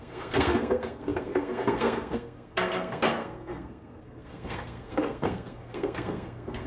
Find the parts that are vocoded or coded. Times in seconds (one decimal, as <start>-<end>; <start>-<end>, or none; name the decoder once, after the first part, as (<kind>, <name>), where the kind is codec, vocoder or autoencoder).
0.0-6.7 (codec, SNAC)